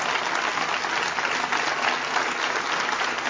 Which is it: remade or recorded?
recorded